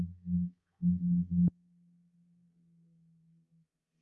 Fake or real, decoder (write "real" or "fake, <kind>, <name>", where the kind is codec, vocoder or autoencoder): fake, codec, SNAC